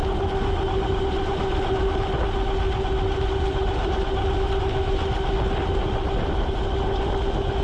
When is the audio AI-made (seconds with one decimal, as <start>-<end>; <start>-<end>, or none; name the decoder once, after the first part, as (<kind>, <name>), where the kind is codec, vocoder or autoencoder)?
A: 4.6-5.0 (autoencoder, DAC-VAE)